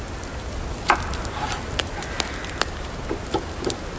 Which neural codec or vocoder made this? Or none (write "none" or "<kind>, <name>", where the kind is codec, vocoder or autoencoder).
none